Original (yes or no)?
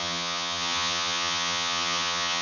no